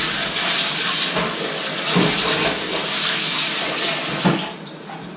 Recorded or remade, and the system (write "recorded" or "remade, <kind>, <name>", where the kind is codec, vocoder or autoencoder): recorded